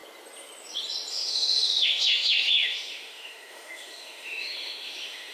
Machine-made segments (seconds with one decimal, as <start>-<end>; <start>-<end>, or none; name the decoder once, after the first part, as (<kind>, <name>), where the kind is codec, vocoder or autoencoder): 1.1-5.3 (autoencoder, DAC-VAE)